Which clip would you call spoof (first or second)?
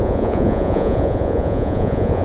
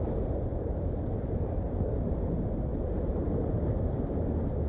first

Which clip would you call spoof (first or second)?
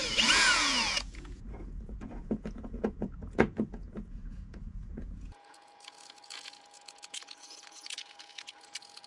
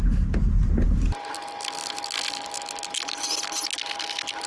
first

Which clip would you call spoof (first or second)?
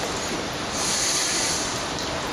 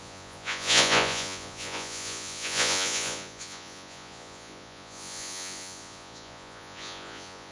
second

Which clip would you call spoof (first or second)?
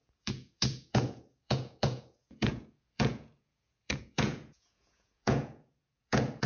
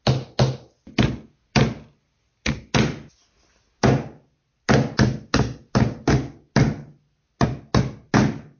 first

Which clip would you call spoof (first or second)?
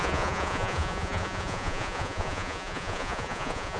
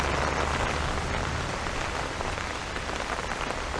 first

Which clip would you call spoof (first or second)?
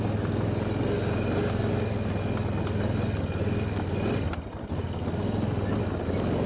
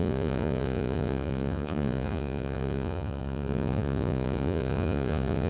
second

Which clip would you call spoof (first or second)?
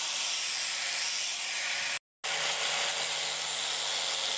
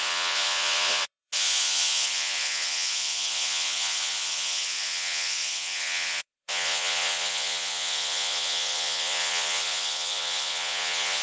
second